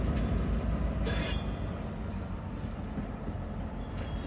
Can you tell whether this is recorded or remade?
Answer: recorded